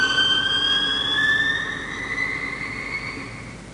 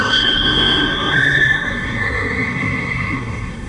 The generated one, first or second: second